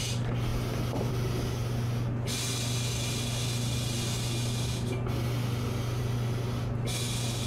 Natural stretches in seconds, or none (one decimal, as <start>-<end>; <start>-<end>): 0.0-7.5